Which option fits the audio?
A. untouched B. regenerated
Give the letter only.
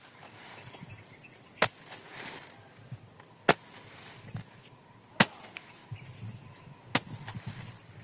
A